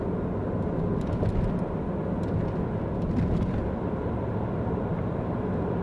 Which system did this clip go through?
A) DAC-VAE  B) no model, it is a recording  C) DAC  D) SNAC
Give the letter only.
B